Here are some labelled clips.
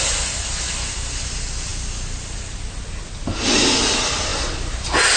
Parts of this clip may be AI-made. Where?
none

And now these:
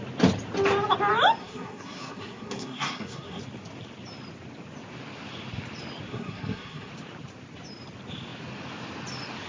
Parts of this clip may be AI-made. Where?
1.4-3.4 (codec, SNAC); 6.1-6.9

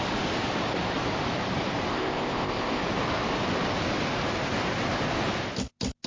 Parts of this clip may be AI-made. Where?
1.9-2.8 (codec, ZipCodec)

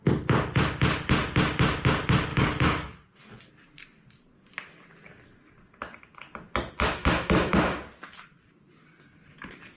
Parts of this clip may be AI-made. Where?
2.3-3.5 (codec, DAC)

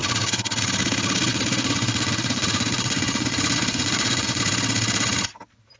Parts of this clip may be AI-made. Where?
1.3-4.4 (vocoder, Vocos)